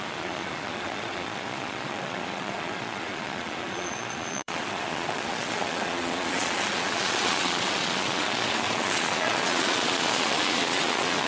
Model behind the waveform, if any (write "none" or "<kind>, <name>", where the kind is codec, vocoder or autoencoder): vocoder, Vocos